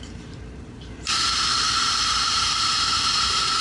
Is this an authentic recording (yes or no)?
no